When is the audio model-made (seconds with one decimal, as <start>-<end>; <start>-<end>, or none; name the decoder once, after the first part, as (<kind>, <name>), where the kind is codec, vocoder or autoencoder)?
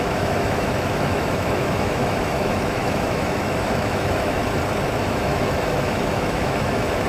0.0-4.4 (autoencoder, DAC-VAE); 5.0-7.1